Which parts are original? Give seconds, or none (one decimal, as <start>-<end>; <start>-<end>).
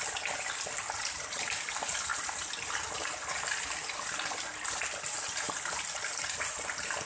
0.0-7.1